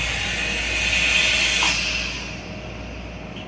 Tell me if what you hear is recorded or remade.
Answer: recorded